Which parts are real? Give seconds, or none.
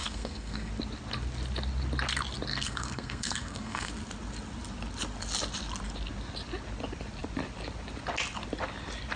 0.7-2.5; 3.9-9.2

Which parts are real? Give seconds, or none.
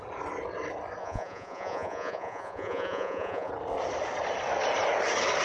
0.0-1.0; 3.5-5.4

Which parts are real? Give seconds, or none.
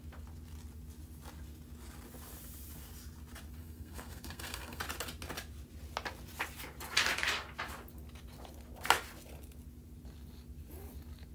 0.0-3.6; 4.8-11.3